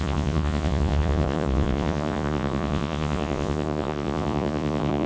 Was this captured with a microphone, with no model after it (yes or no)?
no